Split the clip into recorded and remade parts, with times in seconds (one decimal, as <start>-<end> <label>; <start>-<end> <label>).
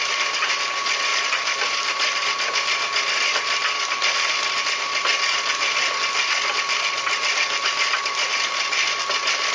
0.0-9.5 recorded